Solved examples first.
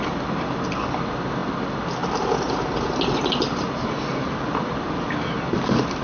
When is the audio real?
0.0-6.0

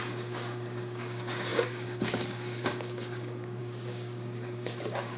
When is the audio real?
none